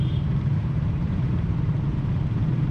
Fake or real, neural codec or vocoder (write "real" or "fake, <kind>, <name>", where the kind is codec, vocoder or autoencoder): fake, vocoder, BigVGAN v2